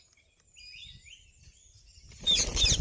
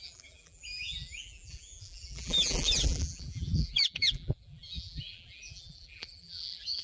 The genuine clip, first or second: first